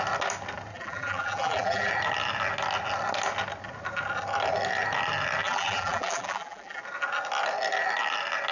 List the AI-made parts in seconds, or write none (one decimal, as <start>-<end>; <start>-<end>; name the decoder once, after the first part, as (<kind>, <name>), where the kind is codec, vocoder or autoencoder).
0.7-1.9 (vocoder, BigVGAN v2); 5.4-6.8